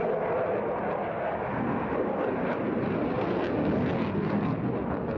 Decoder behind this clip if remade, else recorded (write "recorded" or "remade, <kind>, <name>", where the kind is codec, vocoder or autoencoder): recorded